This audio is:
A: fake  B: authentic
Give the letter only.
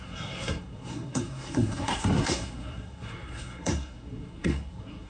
A